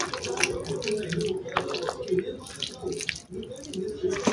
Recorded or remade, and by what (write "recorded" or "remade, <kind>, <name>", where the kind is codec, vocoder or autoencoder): recorded